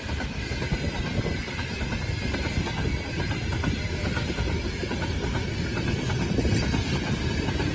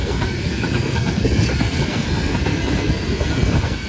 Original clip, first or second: first